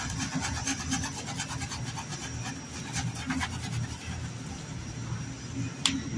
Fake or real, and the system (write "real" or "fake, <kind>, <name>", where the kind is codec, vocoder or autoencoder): real